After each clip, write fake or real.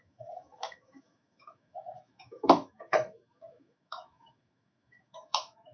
fake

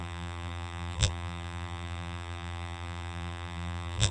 fake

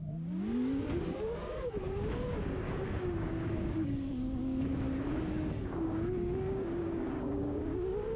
fake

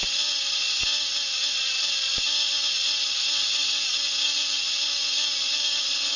real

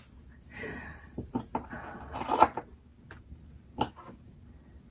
real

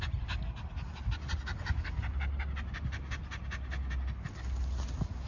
real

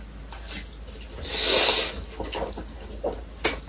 real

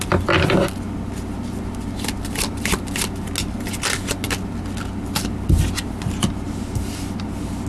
real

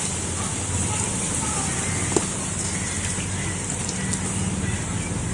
real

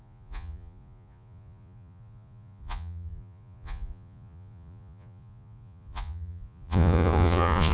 fake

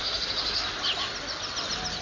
real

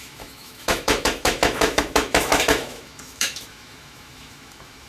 fake